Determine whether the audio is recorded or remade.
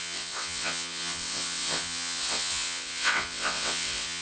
remade